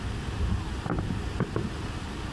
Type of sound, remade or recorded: recorded